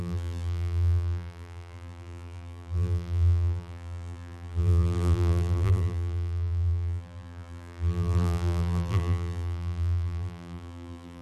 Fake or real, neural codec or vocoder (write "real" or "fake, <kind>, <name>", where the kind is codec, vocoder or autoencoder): fake, vocoder, BigVGAN v2